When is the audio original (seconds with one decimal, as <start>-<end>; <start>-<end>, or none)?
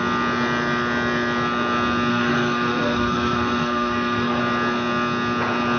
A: 0.0-2.1; 4.4-5.8